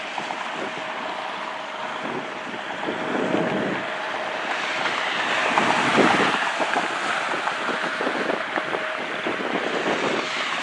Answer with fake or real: real